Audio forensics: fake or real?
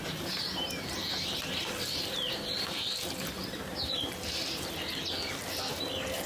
real